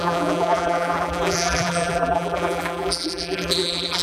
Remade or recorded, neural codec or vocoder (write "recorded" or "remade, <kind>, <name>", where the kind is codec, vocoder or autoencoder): remade, vocoder, BigVGAN v2